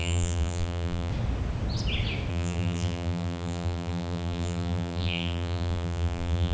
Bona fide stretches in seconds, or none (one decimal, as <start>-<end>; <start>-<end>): 1.1-2.3